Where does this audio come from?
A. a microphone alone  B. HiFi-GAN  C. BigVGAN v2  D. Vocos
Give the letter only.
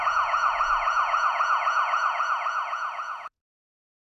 D